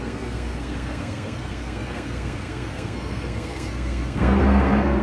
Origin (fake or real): fake